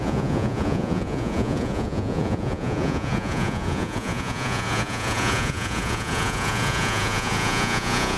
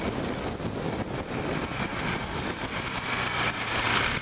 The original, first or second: second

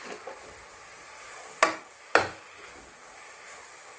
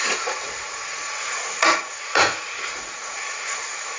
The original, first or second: first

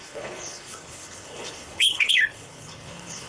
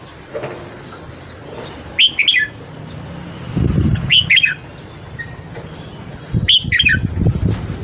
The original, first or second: second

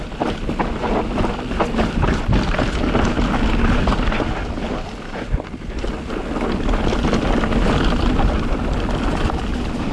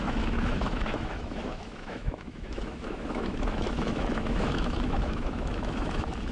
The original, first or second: first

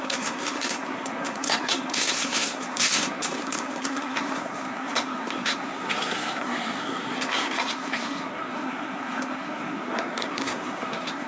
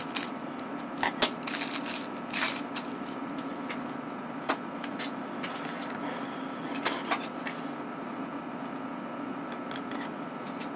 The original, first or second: second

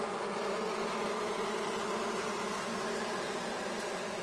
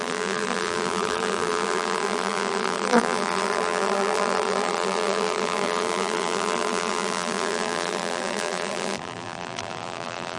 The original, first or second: first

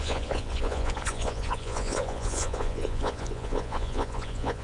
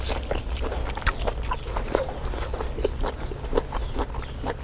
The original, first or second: second